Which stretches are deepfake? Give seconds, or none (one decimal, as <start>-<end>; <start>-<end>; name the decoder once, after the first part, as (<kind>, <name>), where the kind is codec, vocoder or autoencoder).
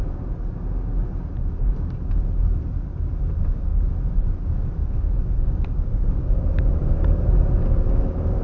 none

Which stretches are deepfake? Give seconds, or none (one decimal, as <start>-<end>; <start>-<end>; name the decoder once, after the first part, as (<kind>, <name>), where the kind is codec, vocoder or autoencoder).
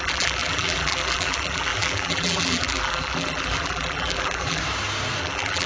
0.0-4.6 (vocoder, BigVGAN v2); 5.2-5.7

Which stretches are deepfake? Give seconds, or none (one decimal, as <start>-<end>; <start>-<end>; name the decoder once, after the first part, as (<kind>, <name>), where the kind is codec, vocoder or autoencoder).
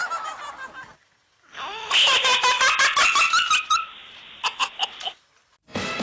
4.0-4.5 (vocoder, BigVGAN v2)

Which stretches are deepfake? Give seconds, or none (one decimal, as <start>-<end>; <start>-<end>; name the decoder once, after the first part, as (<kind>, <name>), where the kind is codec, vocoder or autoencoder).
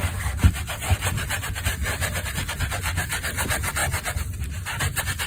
none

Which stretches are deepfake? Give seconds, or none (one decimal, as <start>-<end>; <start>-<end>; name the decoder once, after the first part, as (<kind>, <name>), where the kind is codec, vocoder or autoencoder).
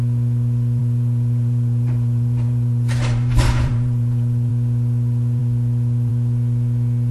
0.8-4.5 (vocoder, BigVGAN v2)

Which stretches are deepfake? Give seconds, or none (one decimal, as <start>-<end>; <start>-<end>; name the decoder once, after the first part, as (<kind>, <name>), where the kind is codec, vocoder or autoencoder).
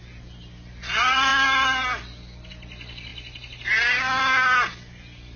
none